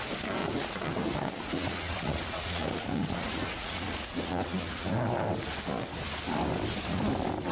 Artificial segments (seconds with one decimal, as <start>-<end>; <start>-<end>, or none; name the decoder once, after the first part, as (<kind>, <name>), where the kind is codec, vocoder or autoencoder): 0.4-4.9 (vocoder, Vocos)